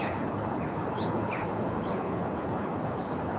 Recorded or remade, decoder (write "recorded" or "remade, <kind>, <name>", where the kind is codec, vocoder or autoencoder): remade, codec, HILCodec